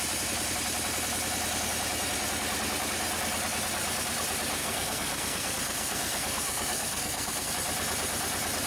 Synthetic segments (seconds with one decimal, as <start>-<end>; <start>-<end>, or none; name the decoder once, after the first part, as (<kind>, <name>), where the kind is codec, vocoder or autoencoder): 4.6-7.5 (codec, SNAC)